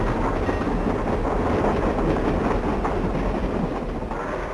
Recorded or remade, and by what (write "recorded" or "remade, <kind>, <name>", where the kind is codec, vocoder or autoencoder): recorded